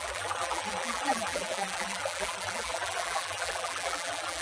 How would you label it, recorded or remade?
remade